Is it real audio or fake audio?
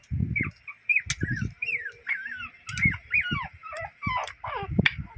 real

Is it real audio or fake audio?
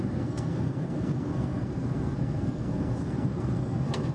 fake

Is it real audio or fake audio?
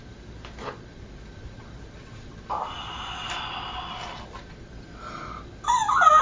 real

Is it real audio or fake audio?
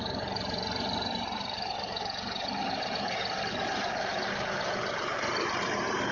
fake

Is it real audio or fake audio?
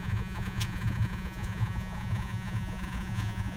fake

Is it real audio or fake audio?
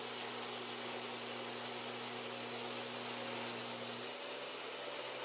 real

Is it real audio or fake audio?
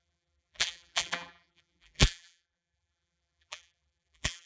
fake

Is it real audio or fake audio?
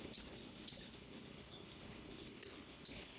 fake